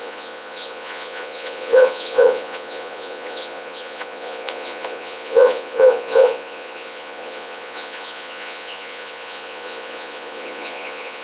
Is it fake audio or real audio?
fake